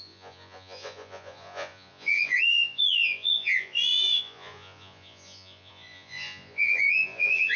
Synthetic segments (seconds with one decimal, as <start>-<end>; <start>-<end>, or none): 0.0-7.6